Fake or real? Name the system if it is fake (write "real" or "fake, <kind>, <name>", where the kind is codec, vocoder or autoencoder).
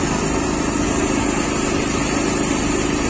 real